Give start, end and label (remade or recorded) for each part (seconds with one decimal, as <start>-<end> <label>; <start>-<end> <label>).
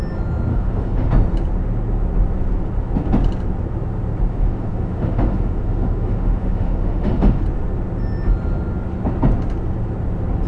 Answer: 0.0-0.5 recorded; 0.5-1.1 remade; 1.1-4.3 recorded; 4.3-7.4 remade; 7.4-10.5 recorded